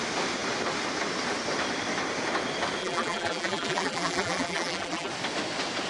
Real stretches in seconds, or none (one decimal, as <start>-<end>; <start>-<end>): 0.0-2.8; 5.1-5.9